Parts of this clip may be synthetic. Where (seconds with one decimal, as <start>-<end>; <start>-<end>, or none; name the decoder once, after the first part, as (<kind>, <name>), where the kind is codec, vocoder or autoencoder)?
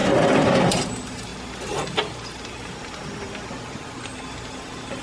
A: 0.0-1.3 (vocoder, BigVGAN v2); 4.3-5.0